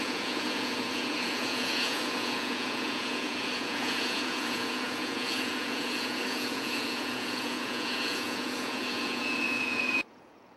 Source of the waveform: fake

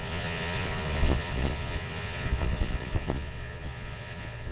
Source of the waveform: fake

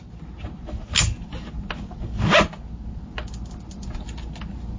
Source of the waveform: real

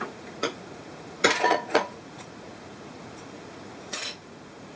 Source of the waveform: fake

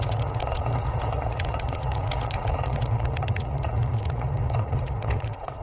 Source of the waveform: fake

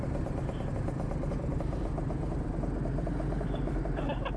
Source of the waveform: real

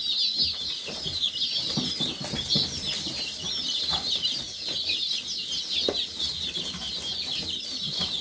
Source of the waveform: real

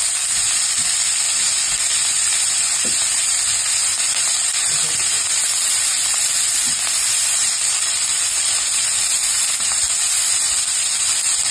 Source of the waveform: real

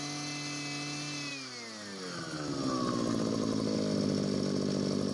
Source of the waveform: real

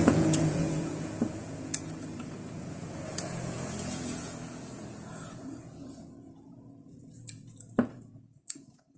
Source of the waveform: fake